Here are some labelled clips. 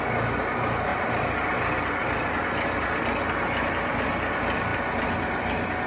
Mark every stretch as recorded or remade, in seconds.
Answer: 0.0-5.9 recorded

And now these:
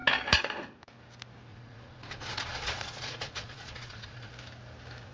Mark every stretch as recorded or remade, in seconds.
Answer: 0.0-1.5 recorded; 1.5-4.3 remade; 4.3-5.1 recorded

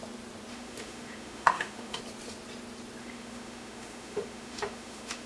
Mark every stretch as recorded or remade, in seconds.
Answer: 0.0-0.5 recorded; 0.5-2.0 remade; 2.0-3.0 recorded; 3.0-5.3 remade